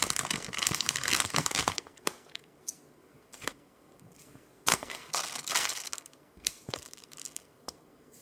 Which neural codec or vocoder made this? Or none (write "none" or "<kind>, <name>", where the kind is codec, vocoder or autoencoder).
codec, SNAC